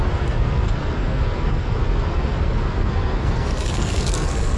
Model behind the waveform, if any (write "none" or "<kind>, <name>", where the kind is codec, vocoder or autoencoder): codec, SNAC